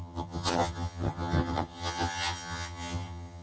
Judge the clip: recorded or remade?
remade